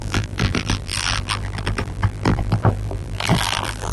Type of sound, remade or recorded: remade